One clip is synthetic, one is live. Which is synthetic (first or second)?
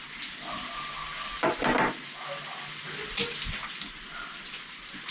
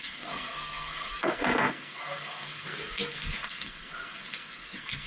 second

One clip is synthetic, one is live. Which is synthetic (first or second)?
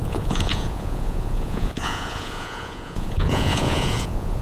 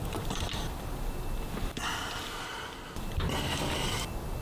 first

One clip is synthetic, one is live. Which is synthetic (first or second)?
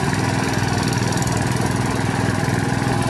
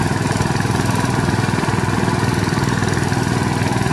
second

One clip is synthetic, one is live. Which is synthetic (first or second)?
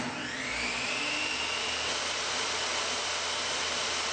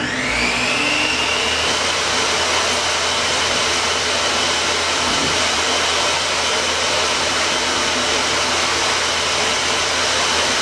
first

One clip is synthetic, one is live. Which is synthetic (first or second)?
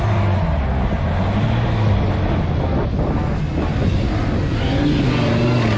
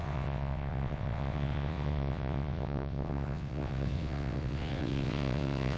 second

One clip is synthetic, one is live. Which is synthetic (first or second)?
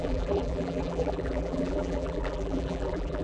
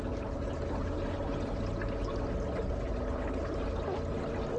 first